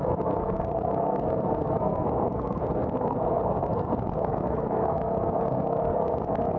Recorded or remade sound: remade